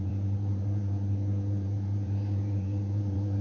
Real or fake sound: fake